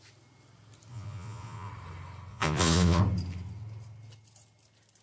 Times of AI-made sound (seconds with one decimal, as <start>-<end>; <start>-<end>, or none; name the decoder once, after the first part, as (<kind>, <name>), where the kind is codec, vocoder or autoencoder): 0.9-1.7 (vocoder, Vocos); 2.3-3.0